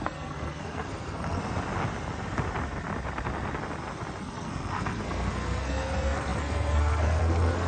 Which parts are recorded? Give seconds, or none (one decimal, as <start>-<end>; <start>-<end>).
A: 1.4-4.2